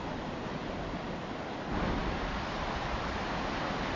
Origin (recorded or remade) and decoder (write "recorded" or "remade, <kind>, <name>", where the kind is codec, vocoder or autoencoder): recorded